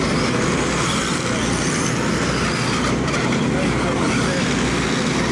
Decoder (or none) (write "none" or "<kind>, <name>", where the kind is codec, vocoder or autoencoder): none